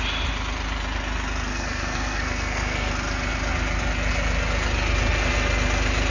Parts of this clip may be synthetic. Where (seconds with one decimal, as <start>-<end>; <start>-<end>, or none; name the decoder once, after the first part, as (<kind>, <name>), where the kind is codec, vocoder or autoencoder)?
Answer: 1.5-2.9 (codec, SNAC)